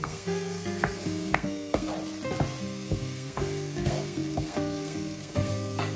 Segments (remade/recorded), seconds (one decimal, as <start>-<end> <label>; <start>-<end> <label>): 0.0-1.9 remade; 1.9-2.6 recorded; 2.6-6.0 remade